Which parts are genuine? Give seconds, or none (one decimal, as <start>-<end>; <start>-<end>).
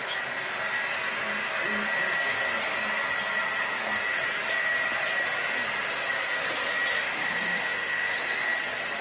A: 0.0-6.9; 8.2-9.0